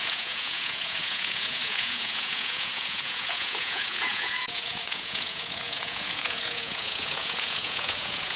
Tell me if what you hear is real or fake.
fake